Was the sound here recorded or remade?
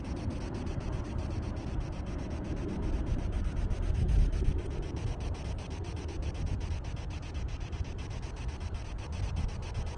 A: recorded